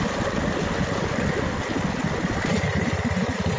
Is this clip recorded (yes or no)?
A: yes